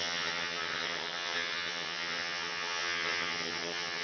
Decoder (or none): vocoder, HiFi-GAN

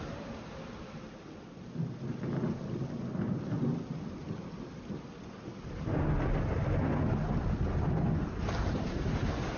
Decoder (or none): none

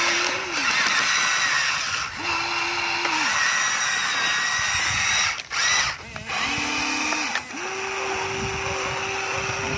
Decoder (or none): none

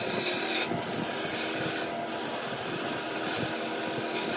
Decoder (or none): none